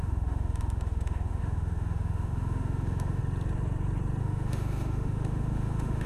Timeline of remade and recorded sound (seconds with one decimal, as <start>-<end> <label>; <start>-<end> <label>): 0.0-3.2 remade; 3.2-4.2 recorded; 4.2-6.1 remade